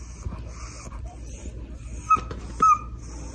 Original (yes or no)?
yes